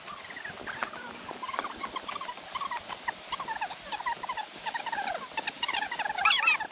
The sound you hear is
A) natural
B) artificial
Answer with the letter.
A